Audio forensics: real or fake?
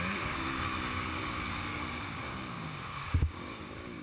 fake